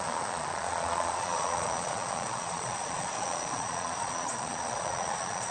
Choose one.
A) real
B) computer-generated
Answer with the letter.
B